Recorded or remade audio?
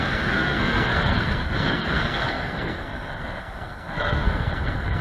remade